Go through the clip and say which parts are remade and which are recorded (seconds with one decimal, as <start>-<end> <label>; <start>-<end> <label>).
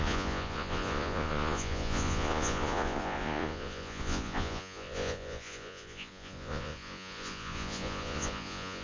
0.0-8.8 remade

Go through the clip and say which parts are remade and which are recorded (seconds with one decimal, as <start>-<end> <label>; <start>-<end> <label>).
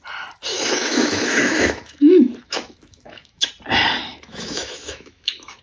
0.0-0.5 recorded; 0.5-3.5 remade; 3.5-4.1 recorded; 4.1-5.6 remade